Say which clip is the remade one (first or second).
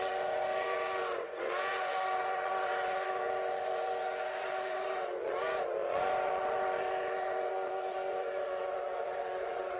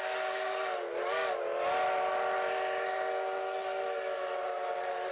first